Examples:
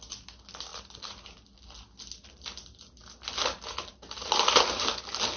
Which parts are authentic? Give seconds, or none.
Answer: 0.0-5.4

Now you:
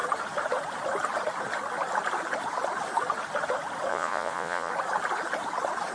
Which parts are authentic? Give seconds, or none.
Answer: 0.0-3.9; 4.7-5.9